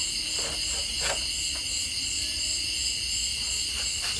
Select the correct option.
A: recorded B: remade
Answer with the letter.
A